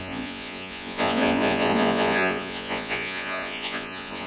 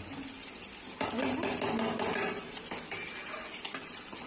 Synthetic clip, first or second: first